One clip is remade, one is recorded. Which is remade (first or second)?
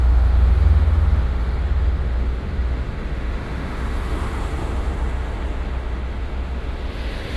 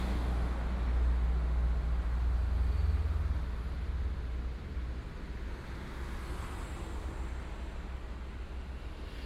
first